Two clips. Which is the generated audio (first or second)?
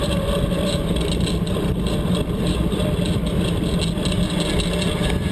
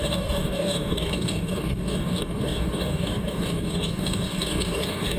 second